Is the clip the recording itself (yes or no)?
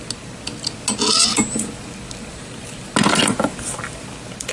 yes